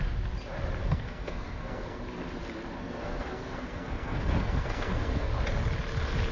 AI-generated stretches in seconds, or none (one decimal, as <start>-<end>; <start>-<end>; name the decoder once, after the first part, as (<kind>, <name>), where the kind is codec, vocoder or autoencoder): 0.8-2.0 (codec, SNAC); 2.8-5.3